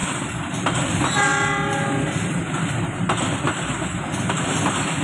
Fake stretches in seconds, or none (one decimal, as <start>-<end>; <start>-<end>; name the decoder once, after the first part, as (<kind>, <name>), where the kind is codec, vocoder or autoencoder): 0.6-1.3 (vocoder, BigVGAN v2); 4.3-5.0